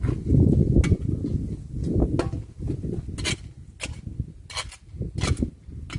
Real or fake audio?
real